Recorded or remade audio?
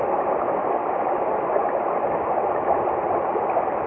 recorded